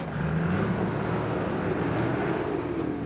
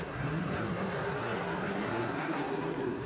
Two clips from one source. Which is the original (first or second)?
first